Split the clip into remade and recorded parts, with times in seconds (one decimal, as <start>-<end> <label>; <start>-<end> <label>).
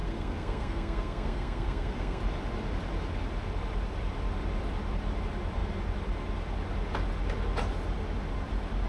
0.0-2.2 remade; 2.2-8.9 recorded